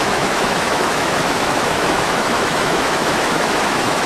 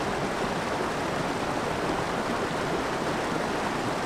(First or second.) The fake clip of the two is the first